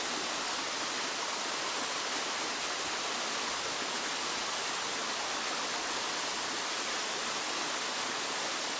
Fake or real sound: real